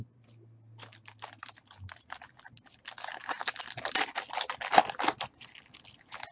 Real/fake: real